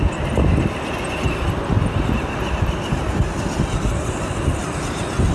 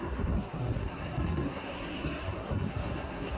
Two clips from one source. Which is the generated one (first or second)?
second